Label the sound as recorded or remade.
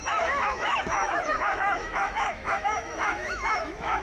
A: remade